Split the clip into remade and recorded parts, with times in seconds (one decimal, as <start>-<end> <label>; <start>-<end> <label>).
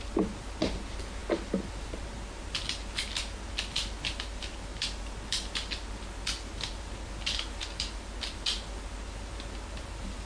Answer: 0.0-10.3 recorded